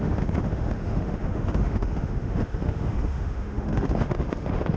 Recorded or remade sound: remade